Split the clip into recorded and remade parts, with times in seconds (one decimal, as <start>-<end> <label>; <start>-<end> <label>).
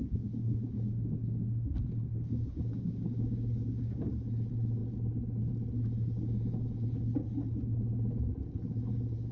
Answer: 0.0-4.1 remade; 4.1-9.3 recorded